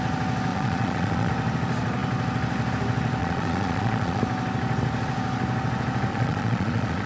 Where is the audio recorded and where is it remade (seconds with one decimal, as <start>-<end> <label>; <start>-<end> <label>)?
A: 0.0-0.5 recorded; 0.5-1.3 remade; 1.3-3.2 recorded; 3.2-4.2 remade; 4.2-6.1 recorded; 6.1-7.1 remade